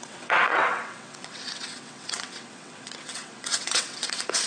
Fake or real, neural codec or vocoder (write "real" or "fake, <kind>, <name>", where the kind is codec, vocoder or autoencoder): fake, vocoder, WaveNeXt